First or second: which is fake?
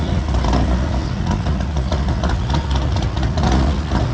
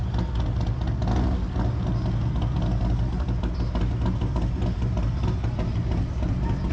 first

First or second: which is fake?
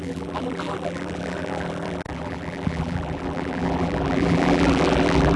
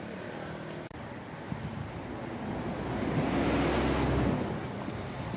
first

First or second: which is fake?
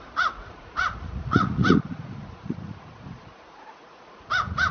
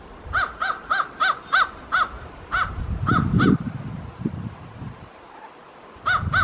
first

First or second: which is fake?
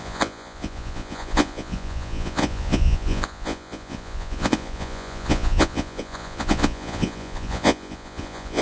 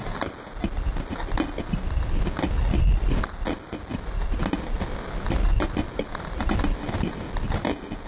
first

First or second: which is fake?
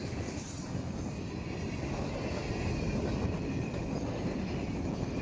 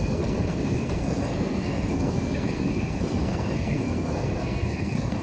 second